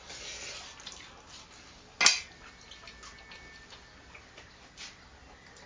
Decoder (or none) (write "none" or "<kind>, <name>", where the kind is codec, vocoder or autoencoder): none